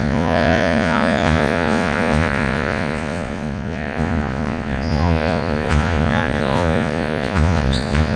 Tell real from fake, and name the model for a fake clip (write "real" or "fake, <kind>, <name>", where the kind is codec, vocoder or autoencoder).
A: fake, vocoder, Vocos